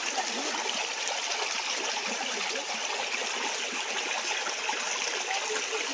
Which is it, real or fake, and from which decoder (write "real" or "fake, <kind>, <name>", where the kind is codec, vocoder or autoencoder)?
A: real